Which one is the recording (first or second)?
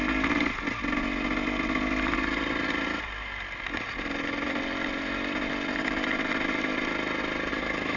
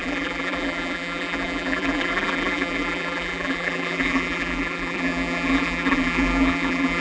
first